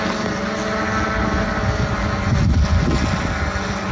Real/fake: real